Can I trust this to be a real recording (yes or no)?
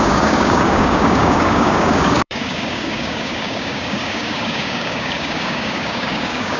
no